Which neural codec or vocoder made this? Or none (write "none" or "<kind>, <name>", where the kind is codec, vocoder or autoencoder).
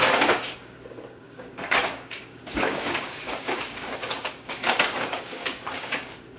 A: codec, DAC